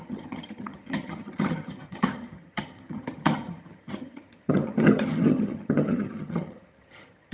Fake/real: fake